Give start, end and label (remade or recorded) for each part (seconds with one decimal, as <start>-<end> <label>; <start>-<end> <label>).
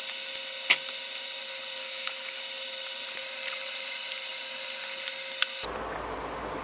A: 0.0-1.8 recorded; 1.8-2.4 remade; 2.4-6.6 recorded